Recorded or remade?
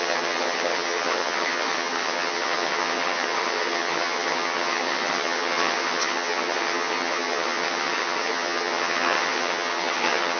remade